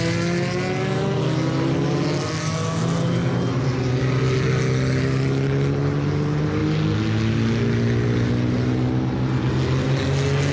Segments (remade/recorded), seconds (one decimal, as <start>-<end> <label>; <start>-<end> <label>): 0.0-10.5 recorded